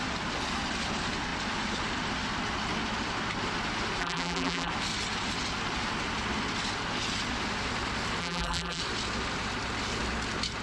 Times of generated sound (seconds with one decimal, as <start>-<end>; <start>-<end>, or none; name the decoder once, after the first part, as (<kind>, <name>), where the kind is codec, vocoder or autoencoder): 4.0-4.7 (vocoder, BigVGAN v2); 8.2-8.8